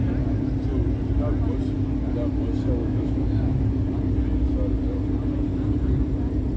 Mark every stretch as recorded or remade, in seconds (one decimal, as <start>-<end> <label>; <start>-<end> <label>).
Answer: 0.0-2.8 recorded; 2.8-3.6 remade; 3.6-6.6 recorded